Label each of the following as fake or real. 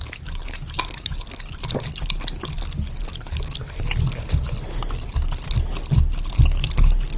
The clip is real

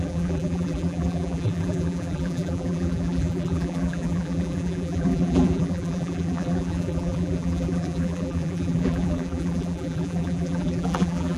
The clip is fake